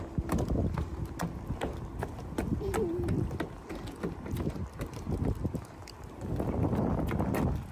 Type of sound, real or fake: real